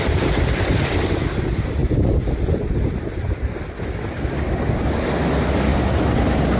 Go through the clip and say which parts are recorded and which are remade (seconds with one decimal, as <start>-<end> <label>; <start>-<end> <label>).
0.0-6.6 recorded

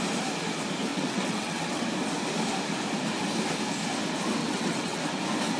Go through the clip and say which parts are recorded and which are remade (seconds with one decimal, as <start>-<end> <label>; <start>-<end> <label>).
0.0-0.9 recorded; 0.9-1.9 remade; 1.9-4.4 recorded; 4.4-5.0 remade; 5.0-5.6 recorded

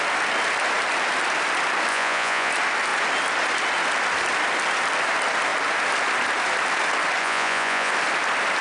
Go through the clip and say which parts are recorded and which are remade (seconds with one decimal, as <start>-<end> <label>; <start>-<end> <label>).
0.0-1.9 recorded; 1.9-2.5 remade; 2.5-7.2 recorded; 7.2-7.9 remade; 7.9-8.6 recorded